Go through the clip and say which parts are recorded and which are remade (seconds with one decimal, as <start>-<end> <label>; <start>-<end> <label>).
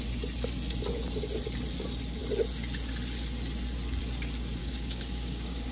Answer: 0.0-4.6 recorded; 4.6-5.7 remade